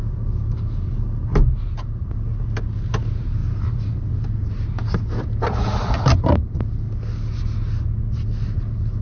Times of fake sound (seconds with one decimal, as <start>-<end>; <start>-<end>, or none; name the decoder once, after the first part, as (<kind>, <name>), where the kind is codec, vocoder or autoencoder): 3.4-4.5 (vocoder, BigVGAN v2)

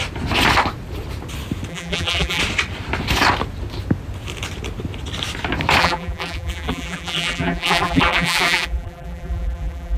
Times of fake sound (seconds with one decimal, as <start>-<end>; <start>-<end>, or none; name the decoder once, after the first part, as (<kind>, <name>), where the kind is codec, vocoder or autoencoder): 1.7-2.4 (vocoder, BigVGAN v2); 5.8-10.0